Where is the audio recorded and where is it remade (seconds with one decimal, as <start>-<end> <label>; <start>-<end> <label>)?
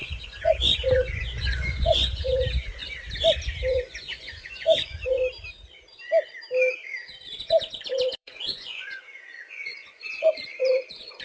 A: 0.0-2.8 remade; 2.8-3.7 recorded; 3.7-5.2 remade; 5.2-7.4 recorded; 7.4-11.2 remade